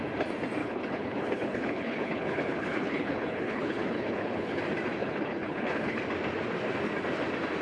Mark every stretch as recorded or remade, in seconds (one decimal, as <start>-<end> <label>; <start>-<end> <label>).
0.0-0.6 recorded; 0.6-4.6 remade; 4.6-5.0 recorded; 5.0-6.0 remade; 6.0-7.6 recorded